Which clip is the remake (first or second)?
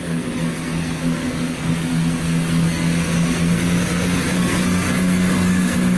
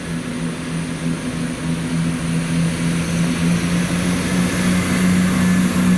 first